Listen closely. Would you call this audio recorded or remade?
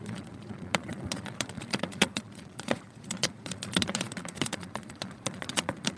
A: remade